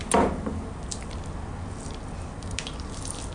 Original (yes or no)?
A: yes